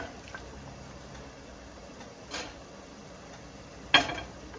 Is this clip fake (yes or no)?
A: no